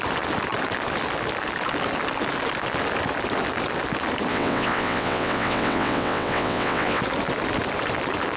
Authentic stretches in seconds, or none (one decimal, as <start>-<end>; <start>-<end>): 0.0-4.3; 7.0-8.4